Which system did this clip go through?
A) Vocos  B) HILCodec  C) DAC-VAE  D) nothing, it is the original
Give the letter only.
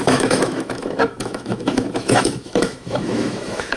C